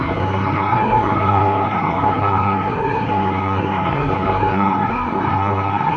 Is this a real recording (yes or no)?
no